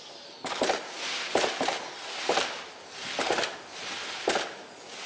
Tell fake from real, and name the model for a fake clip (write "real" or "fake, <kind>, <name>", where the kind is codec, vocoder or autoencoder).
real